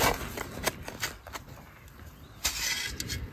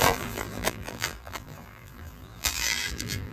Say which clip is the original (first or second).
first